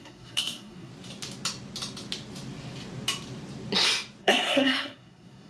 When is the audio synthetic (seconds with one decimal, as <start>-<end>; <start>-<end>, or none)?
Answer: 0.0-0.9; 4.2-5.5